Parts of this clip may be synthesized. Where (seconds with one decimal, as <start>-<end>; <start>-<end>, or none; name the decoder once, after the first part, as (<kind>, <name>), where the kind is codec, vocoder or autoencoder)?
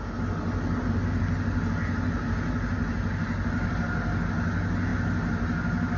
none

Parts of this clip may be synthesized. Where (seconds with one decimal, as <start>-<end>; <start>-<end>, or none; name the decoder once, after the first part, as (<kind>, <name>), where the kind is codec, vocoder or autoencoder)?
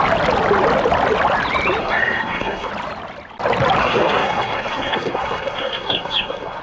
1.8-2.7 (codec, SNAC); 3.8-6.6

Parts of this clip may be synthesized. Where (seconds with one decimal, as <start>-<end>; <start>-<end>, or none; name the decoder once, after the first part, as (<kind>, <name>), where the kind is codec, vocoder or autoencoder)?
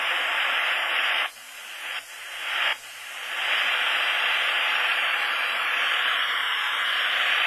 none